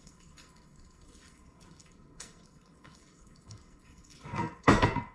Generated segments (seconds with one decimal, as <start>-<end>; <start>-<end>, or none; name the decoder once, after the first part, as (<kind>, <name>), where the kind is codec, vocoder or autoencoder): 0.0-5.1 (codec, SNAC)